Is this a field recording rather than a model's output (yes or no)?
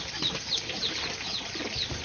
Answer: yes